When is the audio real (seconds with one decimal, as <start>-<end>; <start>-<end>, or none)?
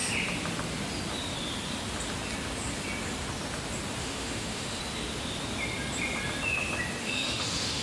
0.0-4.0; 4.8-7.0